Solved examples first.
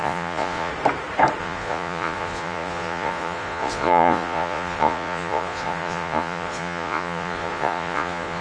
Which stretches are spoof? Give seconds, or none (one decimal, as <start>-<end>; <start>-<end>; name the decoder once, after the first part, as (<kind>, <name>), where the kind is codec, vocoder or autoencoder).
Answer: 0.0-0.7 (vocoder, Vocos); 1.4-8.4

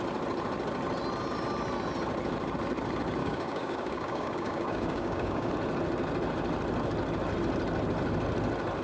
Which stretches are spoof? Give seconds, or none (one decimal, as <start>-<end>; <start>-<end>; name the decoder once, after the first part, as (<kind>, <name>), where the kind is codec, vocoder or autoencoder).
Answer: 3.2-5.5 (codec, DAC)

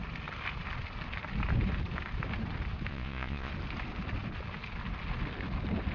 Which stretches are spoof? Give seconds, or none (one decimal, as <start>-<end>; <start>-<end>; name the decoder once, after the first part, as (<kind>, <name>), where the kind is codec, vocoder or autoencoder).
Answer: 2.9-3.5 (vocoder, Vocos)

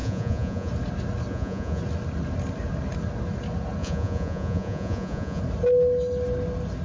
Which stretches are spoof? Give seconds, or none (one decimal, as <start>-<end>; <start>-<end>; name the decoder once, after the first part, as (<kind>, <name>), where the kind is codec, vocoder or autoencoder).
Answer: 0.0-0.7 (vocoder, Vocos); 1.3-1.8; 3.8-5.4

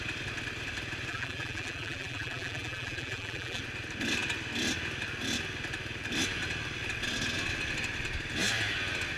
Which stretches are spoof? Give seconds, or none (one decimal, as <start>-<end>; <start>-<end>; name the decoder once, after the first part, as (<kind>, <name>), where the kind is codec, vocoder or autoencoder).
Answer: 1.1-3.6 (vocoder, BigVGAN v2)

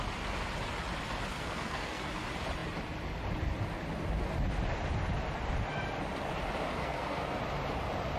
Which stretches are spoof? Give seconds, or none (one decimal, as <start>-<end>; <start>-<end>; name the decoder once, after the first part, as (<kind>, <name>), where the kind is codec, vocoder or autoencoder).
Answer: 1.3-2.1 (codec, SNAC); 6.8-7.4

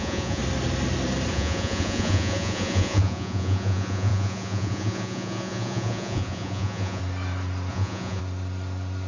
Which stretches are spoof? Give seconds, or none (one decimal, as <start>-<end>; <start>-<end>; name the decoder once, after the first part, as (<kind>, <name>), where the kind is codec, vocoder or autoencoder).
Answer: 0.0-0.4 (vocoder, Vocos); 1.3-7.0; 7.7-8.2

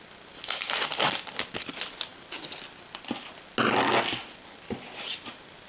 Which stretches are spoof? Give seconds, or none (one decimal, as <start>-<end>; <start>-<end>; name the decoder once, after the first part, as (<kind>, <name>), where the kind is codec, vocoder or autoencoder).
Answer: none